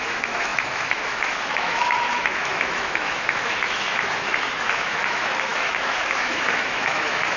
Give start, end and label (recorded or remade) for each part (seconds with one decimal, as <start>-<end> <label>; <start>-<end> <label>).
0.0-7.4 remade